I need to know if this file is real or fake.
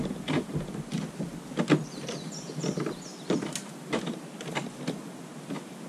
real